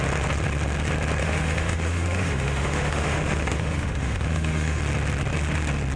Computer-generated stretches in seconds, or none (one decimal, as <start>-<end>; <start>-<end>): 1.2-4.8